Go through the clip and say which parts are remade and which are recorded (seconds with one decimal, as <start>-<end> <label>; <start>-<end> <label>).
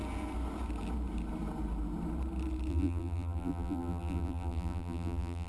0.0-2.7 recorded; 2.7-5.5 remade